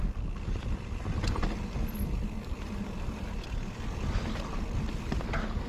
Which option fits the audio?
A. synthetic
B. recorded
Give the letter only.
B